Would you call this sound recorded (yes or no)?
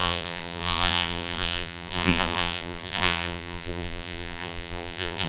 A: no